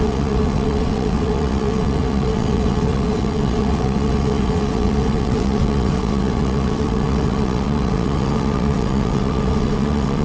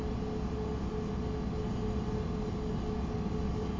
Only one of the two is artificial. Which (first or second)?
first